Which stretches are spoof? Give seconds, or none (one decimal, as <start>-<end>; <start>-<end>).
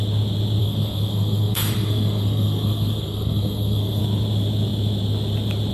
0.6-4.0